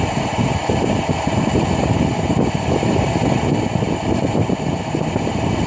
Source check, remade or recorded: recorded